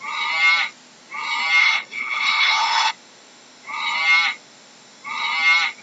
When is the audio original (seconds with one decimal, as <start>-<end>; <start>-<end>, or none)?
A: 0.0-1.6; 2.9-5.8